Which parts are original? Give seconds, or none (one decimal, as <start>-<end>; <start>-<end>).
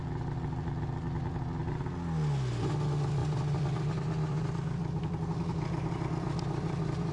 0.0-3.2